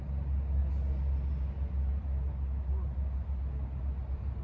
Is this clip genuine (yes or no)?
yes